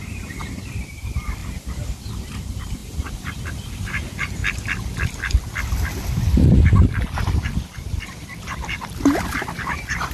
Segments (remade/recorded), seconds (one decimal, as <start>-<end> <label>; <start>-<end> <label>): 0.0-1.4 remade; 1.4-2.2 recorded; 2.2-4.4 remade; 4.4-8.4 recorded; 8.4-10.1 remade